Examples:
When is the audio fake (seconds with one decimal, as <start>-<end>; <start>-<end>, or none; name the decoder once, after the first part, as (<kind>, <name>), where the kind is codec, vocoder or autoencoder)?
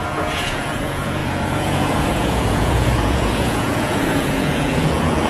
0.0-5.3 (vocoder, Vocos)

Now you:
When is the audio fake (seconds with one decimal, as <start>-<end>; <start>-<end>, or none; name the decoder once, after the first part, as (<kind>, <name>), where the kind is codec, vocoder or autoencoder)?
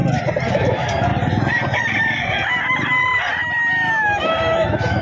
0.5-1.1 (autoencoder, DAC-VAE); 3.9-5.0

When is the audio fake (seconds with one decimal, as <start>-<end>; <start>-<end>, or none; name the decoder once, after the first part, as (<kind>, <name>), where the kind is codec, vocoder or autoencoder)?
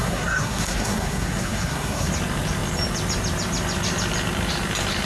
0.0-2.1 (codec, SNAC)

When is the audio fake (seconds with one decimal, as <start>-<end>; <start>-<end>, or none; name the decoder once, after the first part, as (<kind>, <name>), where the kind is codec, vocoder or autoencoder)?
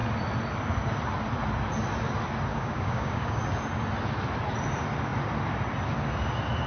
2.5-3.4 (codec, DAC)